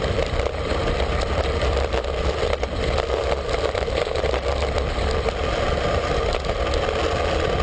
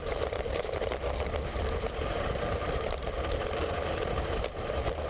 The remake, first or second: second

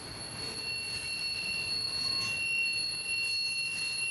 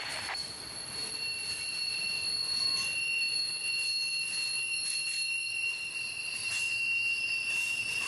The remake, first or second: second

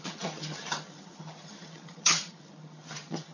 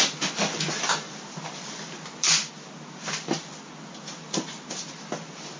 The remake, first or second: first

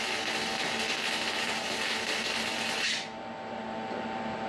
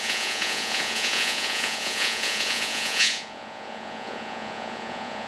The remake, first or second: second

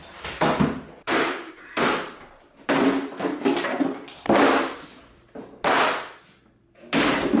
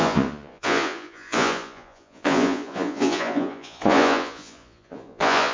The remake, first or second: second